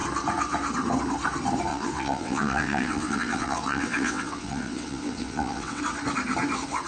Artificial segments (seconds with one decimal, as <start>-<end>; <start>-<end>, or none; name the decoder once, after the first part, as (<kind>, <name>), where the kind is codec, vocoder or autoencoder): 1.7-5.8 (vocoder, WaveNeXt)